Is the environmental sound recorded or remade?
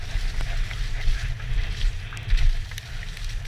recorded